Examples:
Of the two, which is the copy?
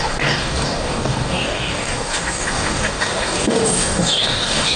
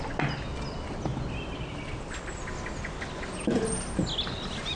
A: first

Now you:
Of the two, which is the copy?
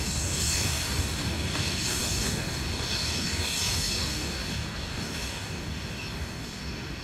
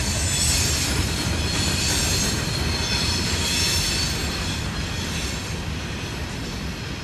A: first